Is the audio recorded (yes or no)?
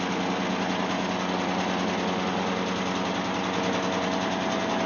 yes